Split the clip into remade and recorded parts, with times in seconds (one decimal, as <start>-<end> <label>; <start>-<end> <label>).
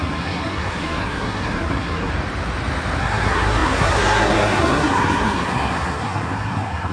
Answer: 0.0-2.1 remade; 2.1-3.0 recorded; 3.0-6.9 remade